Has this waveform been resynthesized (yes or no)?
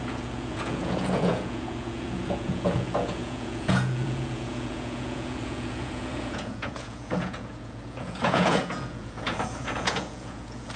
yes